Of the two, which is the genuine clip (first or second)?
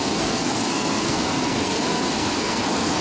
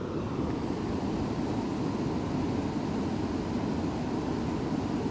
second